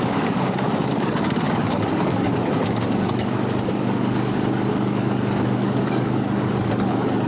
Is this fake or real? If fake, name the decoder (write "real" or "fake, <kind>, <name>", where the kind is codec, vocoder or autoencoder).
fake, codec, DAC